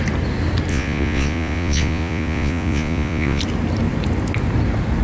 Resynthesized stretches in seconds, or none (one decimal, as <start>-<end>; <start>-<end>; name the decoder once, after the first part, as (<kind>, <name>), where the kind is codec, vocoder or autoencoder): 0.7-3.4 (vocoder, Vocos)